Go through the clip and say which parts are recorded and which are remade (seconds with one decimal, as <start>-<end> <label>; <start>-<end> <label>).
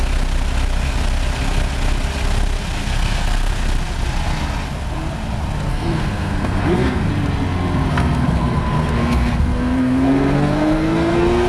0.0-2.8 recorded; 2.8-3.5 remade; 3.5-5.7 recorded; 5.7-7.1 remade; 7.1-7.9 recorded; 7.9-11.5 remade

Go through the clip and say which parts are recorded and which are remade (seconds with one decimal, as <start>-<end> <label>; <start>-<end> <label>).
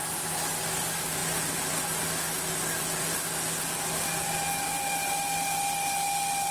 0.0-6.5 recorded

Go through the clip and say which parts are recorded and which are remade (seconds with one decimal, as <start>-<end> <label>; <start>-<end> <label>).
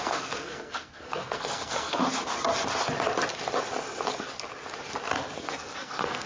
0.0-2.0 remade; 2.0-5.4 recorded; 5.4-6.3 remade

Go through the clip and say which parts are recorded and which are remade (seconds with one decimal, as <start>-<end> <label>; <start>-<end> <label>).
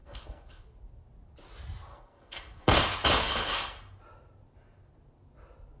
0.0-0.6 remade; 0.6-1.9 recorded; 1.9-2.8 remade; 2.8-3.2 recorded; 3.2-3.8 remade; 3.8-5.8 recorded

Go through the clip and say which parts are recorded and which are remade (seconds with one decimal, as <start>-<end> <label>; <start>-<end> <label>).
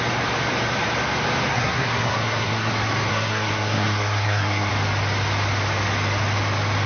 0.0-1.5 recorded; 1.5-2.7 remade; 2.7-3.1 recorded; 3.1-4.7 remade; 4.7-6.9 recorded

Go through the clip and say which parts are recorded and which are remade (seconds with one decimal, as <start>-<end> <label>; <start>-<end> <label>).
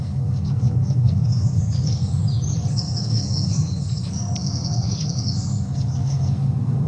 0.0-2.2 remade; 2.2-2.7 recorded; 2.7-6.9 remade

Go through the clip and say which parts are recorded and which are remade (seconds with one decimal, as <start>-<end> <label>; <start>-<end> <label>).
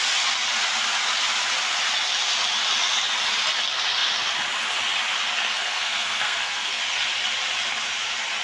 0.0-5.5 recorded; 5.5-6.8 remade; 6.8-8.4 recorded